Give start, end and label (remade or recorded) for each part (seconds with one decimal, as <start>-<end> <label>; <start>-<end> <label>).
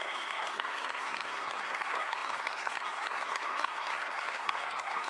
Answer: 0.0-5.1 remade